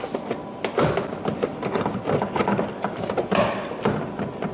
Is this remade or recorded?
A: recorded